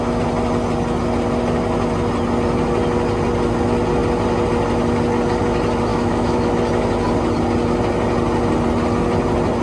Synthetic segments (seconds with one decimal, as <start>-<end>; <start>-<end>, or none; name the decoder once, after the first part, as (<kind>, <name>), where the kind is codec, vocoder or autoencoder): 5.9-6.5 (autoencoder, DAC-VAE)